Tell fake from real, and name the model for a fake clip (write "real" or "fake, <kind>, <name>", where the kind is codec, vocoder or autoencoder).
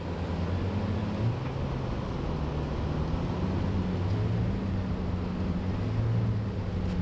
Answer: real